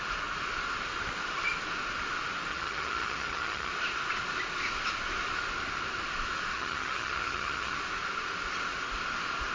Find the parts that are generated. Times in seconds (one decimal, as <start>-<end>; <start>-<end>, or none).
2.5-3.7; 6.5-7.8